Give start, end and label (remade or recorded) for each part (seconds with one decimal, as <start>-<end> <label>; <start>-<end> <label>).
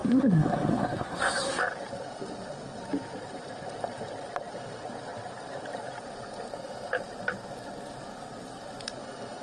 0.0-1.6 remade; 1.6-9.4 recorded